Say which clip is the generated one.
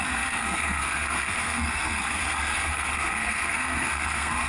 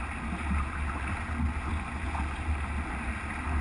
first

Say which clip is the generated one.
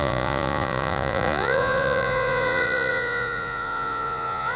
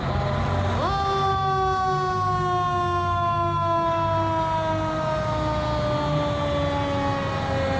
first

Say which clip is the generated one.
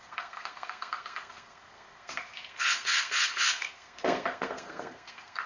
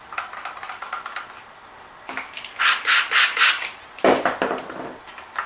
first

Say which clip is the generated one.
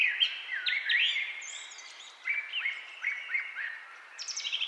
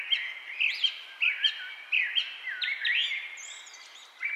first